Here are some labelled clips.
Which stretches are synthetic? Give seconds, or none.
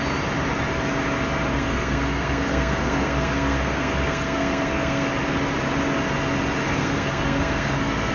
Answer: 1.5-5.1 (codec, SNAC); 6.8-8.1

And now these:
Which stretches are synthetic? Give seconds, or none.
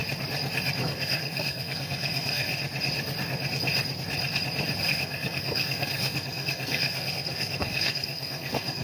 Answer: 0.8-2.5 (codec, SNAC); 4.8-8.8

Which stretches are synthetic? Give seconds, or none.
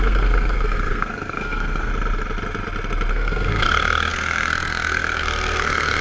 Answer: 0.0-1.9 (codec, SNAC); 3.1-6.0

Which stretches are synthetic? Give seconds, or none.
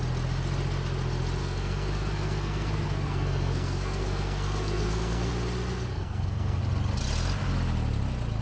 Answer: 1.4-5.3 (codec, SNAC); 5.9-6.6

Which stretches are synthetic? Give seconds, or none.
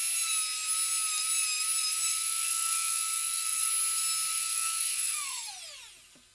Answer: 2.1-3.7 (codec, SNAC); 4.3-5.5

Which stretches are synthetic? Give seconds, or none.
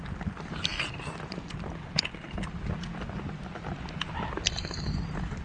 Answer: none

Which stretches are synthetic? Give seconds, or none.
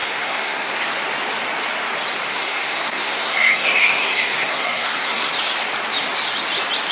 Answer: 0.0-0.8 (codec, SNAC); 2.3-5.3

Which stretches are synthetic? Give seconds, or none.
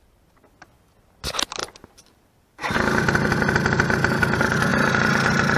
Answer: none